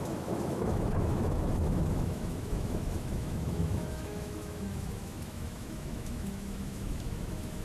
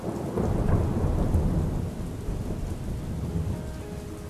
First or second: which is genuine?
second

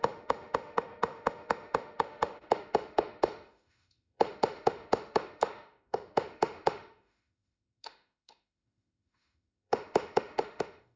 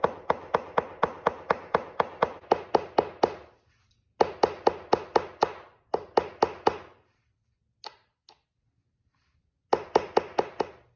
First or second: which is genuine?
second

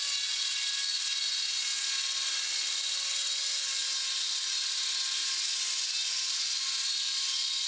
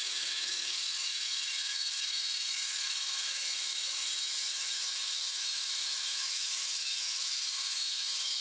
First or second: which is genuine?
first